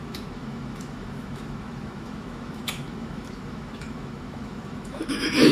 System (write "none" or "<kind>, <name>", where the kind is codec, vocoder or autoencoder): autoencoder, DAC-VAE